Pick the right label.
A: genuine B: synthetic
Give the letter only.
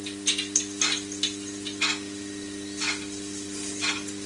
A